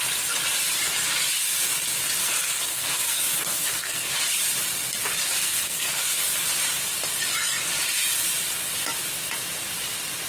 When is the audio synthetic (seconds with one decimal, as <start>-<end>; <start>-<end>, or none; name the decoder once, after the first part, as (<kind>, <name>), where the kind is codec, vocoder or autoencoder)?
2.2-4.1 (codec, SNAC); 5.4-6.2